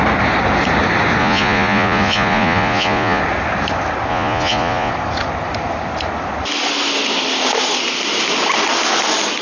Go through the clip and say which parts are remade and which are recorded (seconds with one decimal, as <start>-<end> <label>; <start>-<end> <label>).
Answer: 0.0-1.2 recorded; 1.2-3.2 remade; 3.2-4.1 recorded; 4.1-4.9 remade; 4.9-9.4 recorded

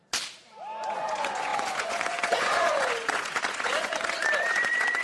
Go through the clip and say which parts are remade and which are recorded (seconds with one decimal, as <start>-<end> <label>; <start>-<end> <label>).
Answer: 0.0-0.9 recorded; 0.9-5.0 remade

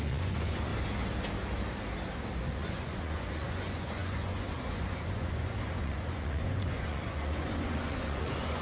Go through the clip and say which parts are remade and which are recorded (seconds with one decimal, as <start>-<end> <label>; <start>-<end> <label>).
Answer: 0.0-0.7 remade; 0.7-2.3 recorded; 2.3-8.6 remade

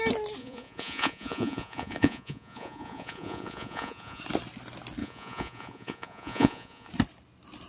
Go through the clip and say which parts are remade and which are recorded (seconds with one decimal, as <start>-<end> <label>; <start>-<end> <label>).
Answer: 0.0-0.4 recorded; 0.4-4.2 remade; 4.2-5.0 recorded; 5.0-6.9 remade; 6.9-7.7 recorded

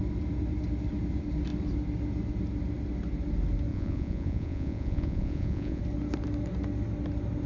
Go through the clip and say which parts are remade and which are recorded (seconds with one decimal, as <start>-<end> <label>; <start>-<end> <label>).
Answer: 0.0-3.7 recorded; 3.7-5.8 remade; 5.8-7.5 recorded

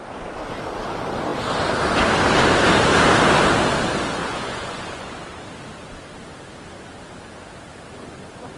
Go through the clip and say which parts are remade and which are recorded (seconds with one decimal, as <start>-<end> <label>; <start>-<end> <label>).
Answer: 0.0-4.2 recorded; 4.2-5.2 remade; 5.2-8.6 recorded

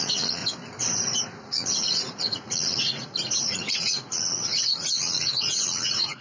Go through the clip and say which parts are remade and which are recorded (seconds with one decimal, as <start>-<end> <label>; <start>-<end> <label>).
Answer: 0.0-0.4 remade; 0.4-1.4 recorded; 1.4-6.2 remade